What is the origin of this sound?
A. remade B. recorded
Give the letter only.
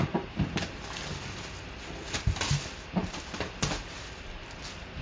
B